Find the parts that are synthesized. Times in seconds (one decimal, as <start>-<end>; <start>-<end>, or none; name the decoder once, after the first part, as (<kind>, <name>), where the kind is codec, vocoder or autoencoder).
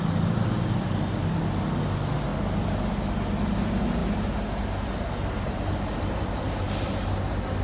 none